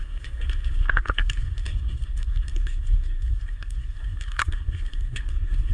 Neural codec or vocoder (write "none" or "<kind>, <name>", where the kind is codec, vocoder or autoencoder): codec, SNAC